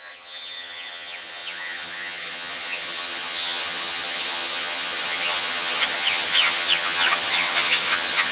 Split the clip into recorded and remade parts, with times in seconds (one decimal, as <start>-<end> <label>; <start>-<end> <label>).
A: 0.0-8.3 remade